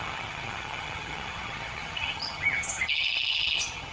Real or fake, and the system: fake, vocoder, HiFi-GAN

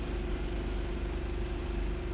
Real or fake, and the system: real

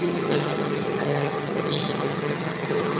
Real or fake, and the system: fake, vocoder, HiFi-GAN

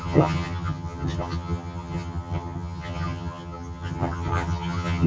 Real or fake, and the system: fake, vocoder, HiFi-GAN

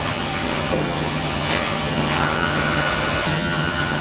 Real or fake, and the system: fake, vocoder, HiFi-GAN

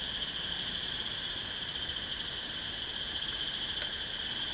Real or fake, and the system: real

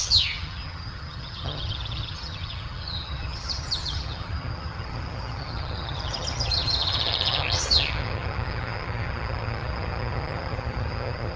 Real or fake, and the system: fake, vocoder, HiFi-GAN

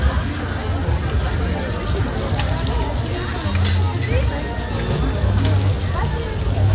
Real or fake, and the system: real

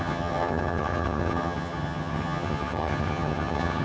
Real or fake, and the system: fake, vocoder, HiFi-GAN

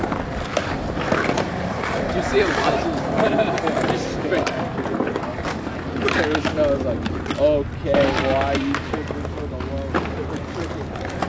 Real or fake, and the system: real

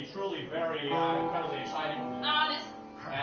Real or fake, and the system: real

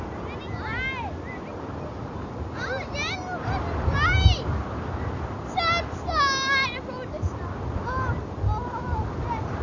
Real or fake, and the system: real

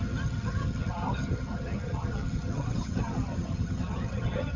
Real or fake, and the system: fake, vocoder, HiFi-GAN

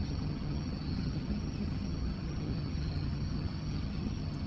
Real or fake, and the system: fake, vocoder, HiFi-GAN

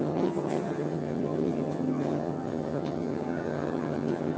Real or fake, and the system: fake, vocoder, HiFi-GAN